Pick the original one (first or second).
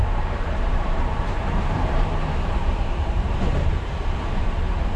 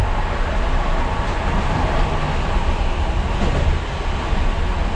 second